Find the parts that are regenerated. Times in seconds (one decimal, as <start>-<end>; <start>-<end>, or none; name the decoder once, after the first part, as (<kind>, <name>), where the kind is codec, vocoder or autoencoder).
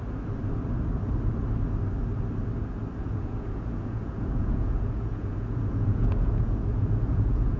3.0-7.6 (vocoder, Vocos)